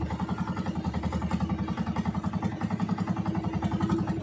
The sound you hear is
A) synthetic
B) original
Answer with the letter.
B